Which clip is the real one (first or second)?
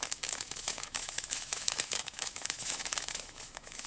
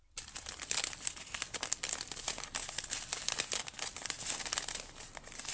second